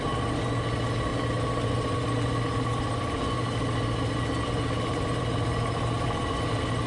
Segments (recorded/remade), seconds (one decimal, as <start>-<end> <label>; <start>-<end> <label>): 0.0-6.9 recorded

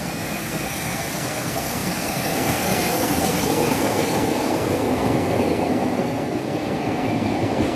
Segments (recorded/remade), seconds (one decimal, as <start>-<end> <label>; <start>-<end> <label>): 0.0-7.8 remade

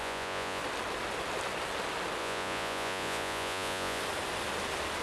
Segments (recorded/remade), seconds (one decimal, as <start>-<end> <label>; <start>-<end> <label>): 0.0-0.6 remade; 0.6-2.2 recorded; 2.2-4.0 remade; 4.0-5.0 recorded

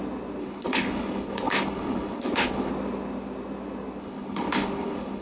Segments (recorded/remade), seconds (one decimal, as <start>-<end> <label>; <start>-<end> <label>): 0.0-0.4 recorded; 0.4-2.7 remade; 2.7-4.0 recorded; 4.0-5.2 remade

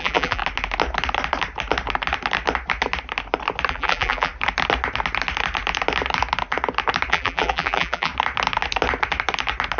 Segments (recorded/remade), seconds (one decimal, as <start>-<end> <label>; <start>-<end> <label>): 0.0-0.4 remade; 0.4-3.7 recorded; 3.7-4.3 remade; 4.3-7.1 recorded; 7.1-8.1 remade; 8.1-9.8 recorded

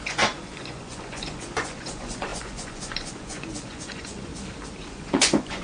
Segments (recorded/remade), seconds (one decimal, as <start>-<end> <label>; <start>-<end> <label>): 0.0-4.3 remade; 4.3-4.8 recorded; 4.8-5.6 remade

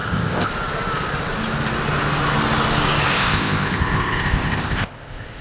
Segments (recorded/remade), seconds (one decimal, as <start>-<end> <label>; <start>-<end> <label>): 0.0-0.5 remade; 0.5-3.1 recorded; 3.1-5.4 remade